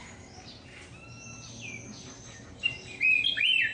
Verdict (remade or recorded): recorded